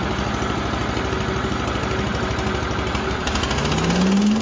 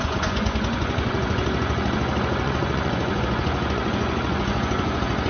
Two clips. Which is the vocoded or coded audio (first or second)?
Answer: second